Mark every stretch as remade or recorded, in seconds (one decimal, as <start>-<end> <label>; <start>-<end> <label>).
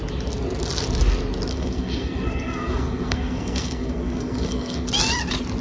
0.0-1.5 recorded; 1.5-4.9 remade; 4.9-5.6 recorded